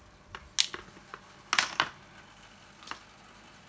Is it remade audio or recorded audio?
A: recorded